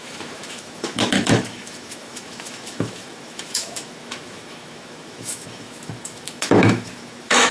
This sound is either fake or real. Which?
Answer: fake